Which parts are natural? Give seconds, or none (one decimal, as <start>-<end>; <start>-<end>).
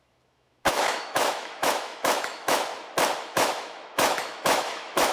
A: 2.7-3.2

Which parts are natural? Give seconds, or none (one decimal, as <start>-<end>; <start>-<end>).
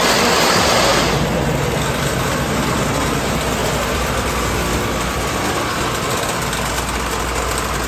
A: 0.0-7.9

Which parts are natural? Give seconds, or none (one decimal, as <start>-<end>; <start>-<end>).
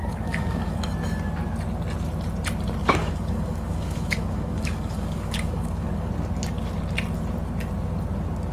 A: 0.9-2.8; 6.1-8.5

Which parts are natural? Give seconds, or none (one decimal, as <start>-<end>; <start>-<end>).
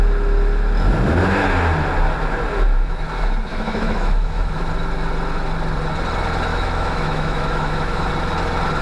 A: 0.0-3.5; 4.6-6.5; 8.1-8.8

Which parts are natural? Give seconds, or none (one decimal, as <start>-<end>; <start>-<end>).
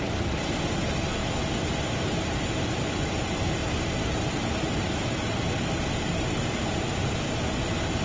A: 0.0-8.0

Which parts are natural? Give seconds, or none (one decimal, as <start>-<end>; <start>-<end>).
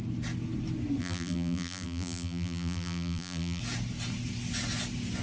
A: 0.0-1.0; 3.6-5.2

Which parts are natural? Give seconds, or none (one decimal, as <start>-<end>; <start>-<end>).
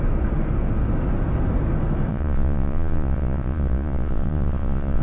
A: 0.0-2.1